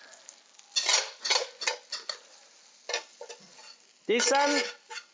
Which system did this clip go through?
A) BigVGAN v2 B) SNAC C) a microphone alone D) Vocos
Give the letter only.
C